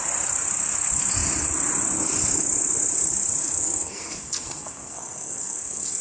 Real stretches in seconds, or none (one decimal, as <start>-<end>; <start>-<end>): 0.0-3.4